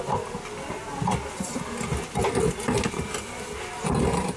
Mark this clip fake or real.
real